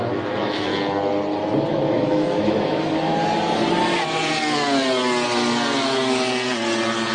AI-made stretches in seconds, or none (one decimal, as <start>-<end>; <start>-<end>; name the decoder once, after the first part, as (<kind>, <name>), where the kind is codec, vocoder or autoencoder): 0.0-0.7 (autoencoder, DAC-VAE); 1.7-3.1